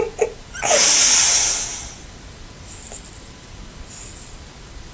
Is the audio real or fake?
real